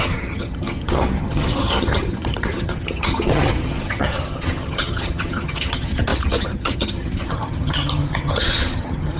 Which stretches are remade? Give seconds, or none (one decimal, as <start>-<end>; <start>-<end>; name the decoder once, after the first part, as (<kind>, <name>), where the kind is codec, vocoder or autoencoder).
0.0-9.2 (vocoder, HiFi-GAN)